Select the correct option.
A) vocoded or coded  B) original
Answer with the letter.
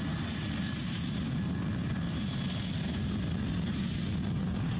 B